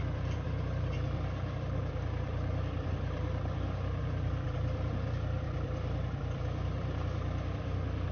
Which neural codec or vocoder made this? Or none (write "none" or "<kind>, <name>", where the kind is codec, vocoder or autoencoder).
vocoder, BigVGAN v2